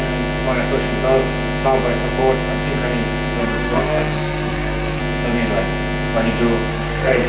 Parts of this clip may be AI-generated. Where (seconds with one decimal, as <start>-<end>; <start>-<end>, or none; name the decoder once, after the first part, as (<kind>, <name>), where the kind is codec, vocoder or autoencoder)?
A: 3.4-5.0 (codec, SNAC); 6.7-7.3

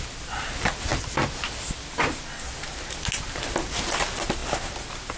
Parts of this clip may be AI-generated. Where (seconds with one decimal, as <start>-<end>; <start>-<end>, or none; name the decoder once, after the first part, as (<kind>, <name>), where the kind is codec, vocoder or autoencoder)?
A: none

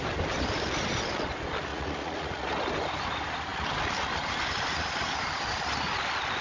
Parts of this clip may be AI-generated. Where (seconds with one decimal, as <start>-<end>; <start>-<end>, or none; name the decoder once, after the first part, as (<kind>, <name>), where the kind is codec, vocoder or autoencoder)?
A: 1.7-2.6 (vocoder, Vocos)

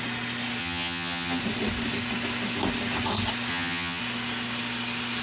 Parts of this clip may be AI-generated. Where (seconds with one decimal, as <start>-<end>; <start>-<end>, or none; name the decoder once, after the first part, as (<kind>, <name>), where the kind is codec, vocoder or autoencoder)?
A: 0.6-1.4 (vocoder, HiFi-GAN); 3.5-4.0

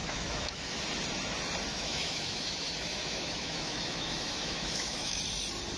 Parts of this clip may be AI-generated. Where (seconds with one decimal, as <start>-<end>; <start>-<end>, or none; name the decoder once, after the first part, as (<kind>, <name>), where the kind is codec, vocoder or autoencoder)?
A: 0.0-0.8 (autoencoder, DAC-VAE); 1.7-5.2

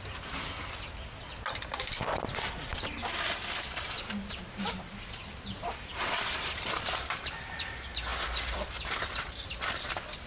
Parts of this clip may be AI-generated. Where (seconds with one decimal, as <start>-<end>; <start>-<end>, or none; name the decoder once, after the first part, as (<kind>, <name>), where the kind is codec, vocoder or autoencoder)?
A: 5.9-7.5 (vocoder, BigVGAN v2); 8.1-10.3